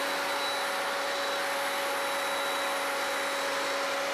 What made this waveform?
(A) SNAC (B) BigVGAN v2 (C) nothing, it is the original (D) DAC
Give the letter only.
C